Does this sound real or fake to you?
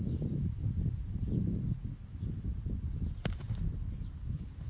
real